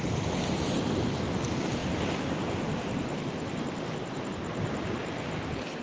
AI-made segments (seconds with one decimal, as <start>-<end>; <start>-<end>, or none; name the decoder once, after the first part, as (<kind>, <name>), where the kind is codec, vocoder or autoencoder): 5.0-5.8 (vocoder, BigVGAN v2)